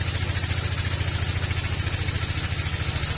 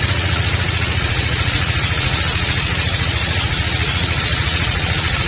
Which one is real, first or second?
first